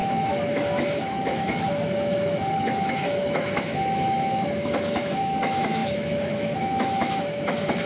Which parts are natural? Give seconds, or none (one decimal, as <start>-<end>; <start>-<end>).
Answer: none